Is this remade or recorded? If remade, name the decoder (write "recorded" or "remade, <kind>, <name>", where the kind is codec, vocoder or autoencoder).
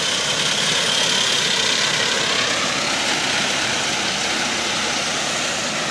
recorded